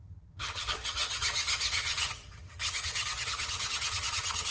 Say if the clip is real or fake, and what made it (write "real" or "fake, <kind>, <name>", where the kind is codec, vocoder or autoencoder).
fake, vocoder, HiFi-GAN